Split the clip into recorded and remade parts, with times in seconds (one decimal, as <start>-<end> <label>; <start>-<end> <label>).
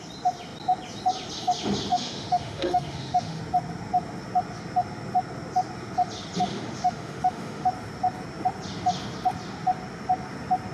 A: 0.0-1.9 recorded; 1.9-3.4 remade; 3.4-6.5 recorded; 6.5-7.7 remade; 7.7-10.7 recorded